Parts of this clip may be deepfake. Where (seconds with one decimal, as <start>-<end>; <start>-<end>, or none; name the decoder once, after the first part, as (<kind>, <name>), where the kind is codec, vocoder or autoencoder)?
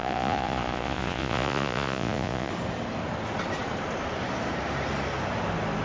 0.0-2.5 (vocoder, Vocos)